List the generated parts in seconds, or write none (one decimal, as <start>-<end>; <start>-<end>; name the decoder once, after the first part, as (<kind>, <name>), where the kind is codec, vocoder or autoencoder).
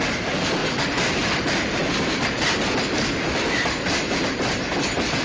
none